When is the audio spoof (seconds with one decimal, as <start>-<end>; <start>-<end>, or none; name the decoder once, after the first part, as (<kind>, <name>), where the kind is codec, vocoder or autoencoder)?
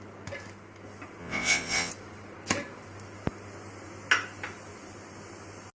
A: 1.2-1.9 (vocoder, WaveNeXt)